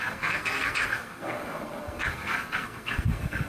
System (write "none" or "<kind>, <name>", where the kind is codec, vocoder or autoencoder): codec, SNAC